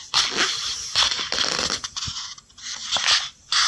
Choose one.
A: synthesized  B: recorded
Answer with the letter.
B